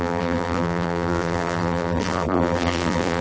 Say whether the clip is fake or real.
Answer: fake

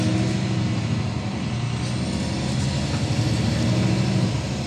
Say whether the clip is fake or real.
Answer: real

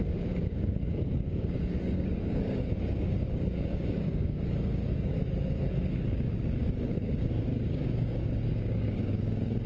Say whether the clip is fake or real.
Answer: fake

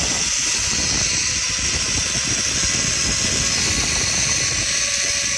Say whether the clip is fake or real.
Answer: real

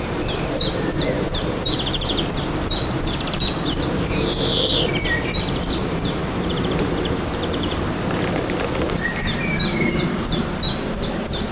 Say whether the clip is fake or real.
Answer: fake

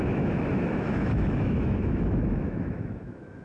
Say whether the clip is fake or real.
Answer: fake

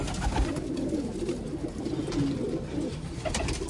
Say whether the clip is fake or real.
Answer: real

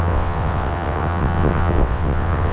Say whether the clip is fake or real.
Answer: fake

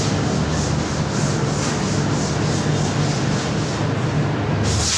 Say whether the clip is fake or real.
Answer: real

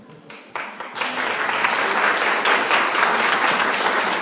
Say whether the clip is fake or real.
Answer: real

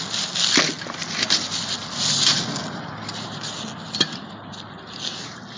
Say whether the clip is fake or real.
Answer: real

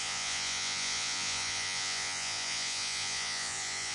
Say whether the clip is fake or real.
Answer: fake